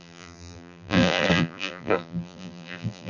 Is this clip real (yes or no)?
no